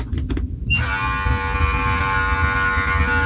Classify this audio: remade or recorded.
recorded